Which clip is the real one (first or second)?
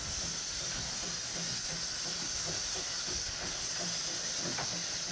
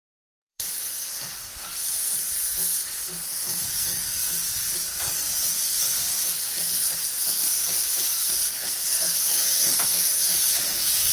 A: first